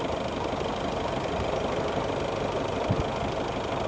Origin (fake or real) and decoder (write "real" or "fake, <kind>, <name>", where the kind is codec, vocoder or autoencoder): real